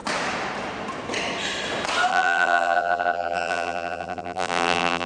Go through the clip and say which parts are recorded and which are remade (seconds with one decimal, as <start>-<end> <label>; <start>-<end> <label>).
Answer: 0.0-2.1 recorded; 2.1-5.1 remade